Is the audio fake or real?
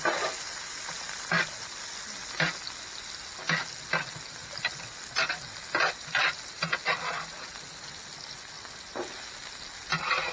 real